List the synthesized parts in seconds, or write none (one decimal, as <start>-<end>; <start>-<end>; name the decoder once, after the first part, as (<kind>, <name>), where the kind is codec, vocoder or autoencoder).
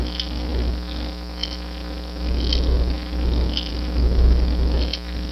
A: none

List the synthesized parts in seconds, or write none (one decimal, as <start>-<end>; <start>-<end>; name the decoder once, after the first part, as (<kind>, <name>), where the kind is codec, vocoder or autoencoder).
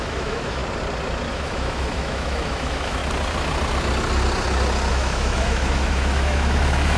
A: 0.0-0.6 (autoencoder, DAC-VAE); 1.3-3.0; 4.9-7.0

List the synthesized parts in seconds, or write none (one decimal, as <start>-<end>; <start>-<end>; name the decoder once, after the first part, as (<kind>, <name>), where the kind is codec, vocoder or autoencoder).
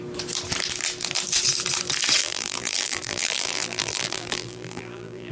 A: 2.2-5.3 (vocoder, BigVGAN v2)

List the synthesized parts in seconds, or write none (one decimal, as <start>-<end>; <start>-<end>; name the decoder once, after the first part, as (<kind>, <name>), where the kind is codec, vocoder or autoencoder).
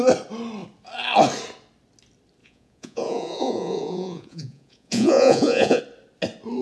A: 2.4-5.8 (vocoder, Vocos)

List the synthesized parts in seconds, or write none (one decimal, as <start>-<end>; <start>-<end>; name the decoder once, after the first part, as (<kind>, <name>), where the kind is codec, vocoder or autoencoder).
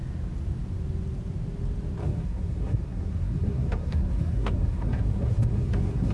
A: 2.0-6.1 (codec, SNAC)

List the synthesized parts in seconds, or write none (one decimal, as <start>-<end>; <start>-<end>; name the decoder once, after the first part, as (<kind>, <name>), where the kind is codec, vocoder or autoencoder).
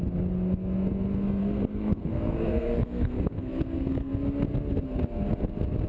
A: 1.4-4.1 (codec, SNAC)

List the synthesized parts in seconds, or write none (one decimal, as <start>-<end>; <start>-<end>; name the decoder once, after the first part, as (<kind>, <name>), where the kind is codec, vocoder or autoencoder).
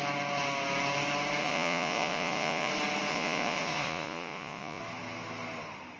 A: 1.4-2.7 (vocoder, Vocos); 3.1-4.8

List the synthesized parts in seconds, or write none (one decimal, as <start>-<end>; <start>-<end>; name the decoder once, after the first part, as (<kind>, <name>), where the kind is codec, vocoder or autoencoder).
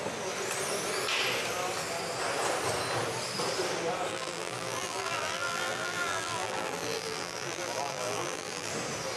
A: 4.1-8.7 (vocoder, BigVGAN v2)